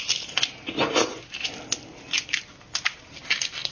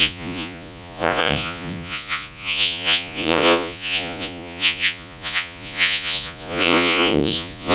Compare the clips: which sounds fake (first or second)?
second